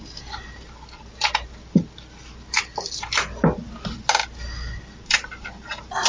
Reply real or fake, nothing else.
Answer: real